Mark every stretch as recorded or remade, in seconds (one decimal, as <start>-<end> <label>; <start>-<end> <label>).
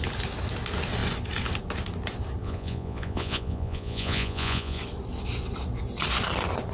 0.0-2.4 recorded; 2.4-4.8 remade; 4.8-6.7 recorded